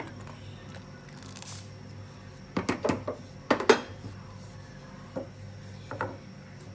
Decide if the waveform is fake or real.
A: real